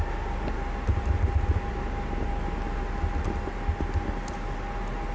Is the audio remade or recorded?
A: recorded